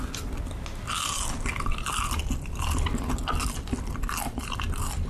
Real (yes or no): yes